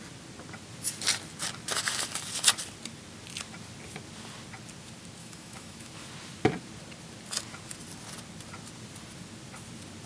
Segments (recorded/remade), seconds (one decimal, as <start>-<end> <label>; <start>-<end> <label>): 0.0-5.2 recorded; 5.2-5.9 remade; 5.9-10.1 recorded